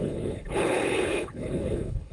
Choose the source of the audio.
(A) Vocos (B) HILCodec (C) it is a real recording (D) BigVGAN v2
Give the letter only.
B